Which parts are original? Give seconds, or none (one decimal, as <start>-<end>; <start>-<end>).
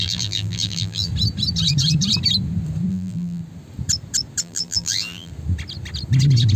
1.1-2.9; 3.4-4.4; 5.3-6.6